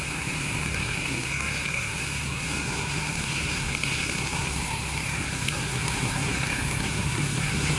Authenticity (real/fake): fake